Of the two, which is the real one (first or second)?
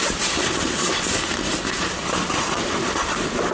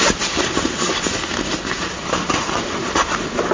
second